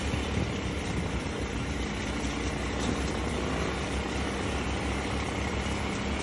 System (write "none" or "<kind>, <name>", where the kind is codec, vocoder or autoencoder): none